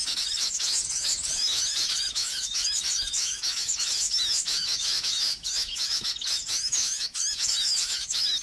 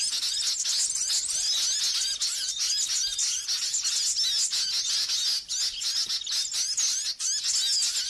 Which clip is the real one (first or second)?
second